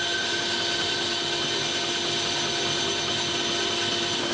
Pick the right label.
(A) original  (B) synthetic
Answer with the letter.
A